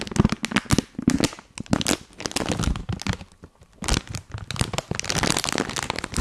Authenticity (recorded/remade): recorded